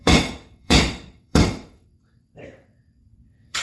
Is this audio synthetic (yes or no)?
yes